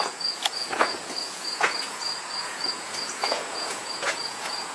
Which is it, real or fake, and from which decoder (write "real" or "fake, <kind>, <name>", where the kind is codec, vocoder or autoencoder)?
fake, vocoder, Vocos